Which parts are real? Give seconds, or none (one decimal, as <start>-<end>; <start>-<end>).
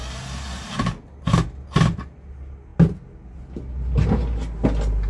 0.0-5.1